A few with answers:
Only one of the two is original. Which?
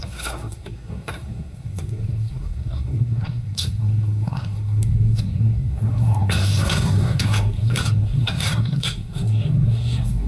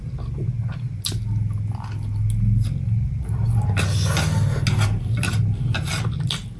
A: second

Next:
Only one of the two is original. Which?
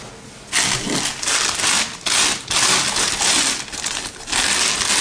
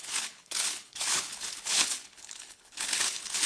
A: first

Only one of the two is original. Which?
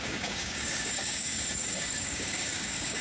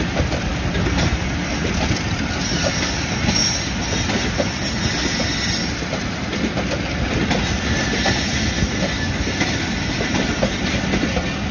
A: second